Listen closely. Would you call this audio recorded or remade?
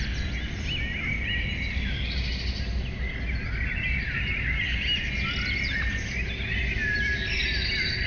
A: recorded